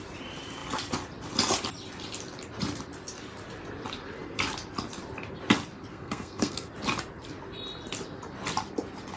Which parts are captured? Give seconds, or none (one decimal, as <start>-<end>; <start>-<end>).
0.0-5.9; 6.7-9.2